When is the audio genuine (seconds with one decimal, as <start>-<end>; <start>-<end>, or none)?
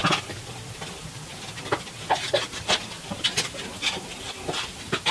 0.0-5.1